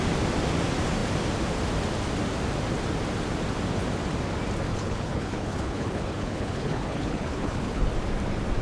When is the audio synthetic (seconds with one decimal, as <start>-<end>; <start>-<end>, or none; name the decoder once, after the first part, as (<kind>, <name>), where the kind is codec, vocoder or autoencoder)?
4.7-7.9 (codec, HILCodec)